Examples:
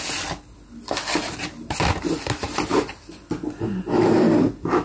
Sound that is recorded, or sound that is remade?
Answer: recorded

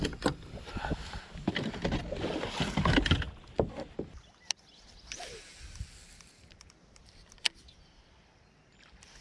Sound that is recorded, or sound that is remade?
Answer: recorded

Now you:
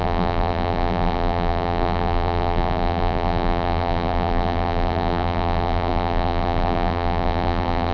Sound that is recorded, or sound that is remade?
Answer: remade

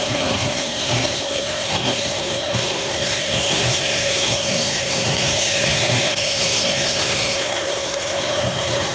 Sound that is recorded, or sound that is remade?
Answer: remade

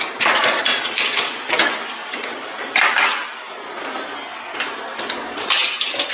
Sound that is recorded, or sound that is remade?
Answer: recorded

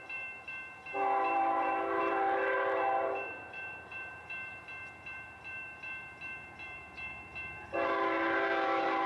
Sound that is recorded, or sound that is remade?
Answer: remade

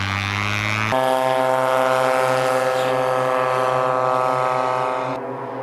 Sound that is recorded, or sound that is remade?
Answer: recorded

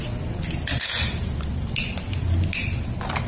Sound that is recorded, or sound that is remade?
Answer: recorded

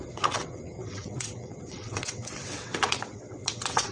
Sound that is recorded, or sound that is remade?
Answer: remade